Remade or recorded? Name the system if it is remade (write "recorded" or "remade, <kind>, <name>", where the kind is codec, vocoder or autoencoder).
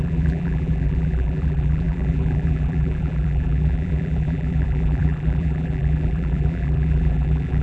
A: remade, vocoder, BigVGAN v2